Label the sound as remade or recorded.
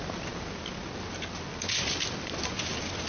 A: recorded